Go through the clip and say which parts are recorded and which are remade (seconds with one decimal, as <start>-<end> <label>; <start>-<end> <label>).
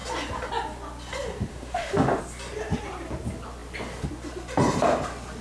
0.0-1.5 recorded; 1.5-2.2 remade; 2.2-5.4 recorded